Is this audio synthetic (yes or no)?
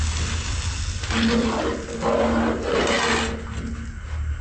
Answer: no